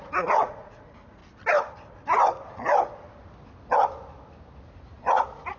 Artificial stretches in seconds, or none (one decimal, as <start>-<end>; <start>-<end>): 0.0-1.2; 4.6-5.6